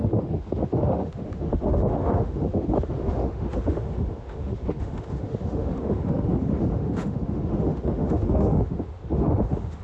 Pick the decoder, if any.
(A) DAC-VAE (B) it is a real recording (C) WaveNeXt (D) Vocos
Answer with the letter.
A